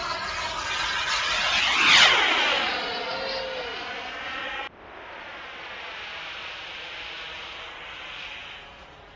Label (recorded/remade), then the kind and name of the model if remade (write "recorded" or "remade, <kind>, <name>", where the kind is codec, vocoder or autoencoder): recorded